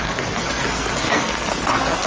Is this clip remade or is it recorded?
remade